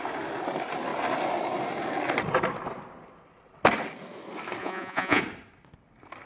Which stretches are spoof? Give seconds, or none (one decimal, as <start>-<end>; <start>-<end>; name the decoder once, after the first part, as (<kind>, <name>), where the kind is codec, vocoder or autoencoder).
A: 4.6-5.2 (vocoder, Vocos)